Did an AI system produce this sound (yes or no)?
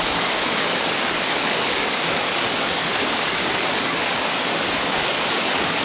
yes